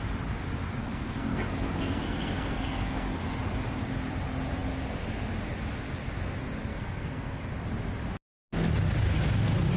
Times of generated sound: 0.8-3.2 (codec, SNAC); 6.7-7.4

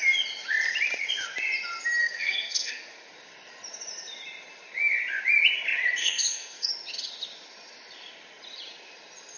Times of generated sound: 2.0-2.8 (codec, SNAC); 6.0-6.7

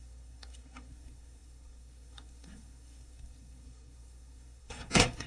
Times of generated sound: 0.0-5.3 (codec, SNAC)

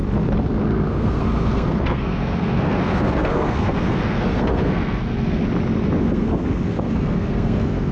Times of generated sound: 0.5-5.4 (codec, SNAC); 6.0-7.9